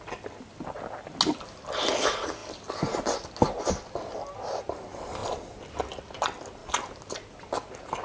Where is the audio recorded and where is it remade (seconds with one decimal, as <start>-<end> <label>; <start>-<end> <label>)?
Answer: 0.0-8.0 recorded